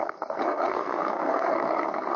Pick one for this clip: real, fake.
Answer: fake